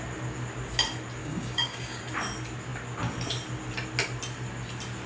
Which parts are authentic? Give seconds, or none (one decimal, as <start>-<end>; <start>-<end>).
0.0-1.2; 2.0-5.1